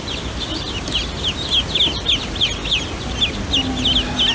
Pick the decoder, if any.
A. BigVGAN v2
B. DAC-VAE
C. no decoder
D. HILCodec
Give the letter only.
C